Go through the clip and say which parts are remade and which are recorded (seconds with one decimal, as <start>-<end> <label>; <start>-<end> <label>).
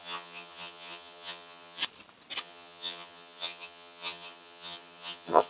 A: 0.0-1.8 remade; 1.8-2.4 recorded; 2.4-5.5 remade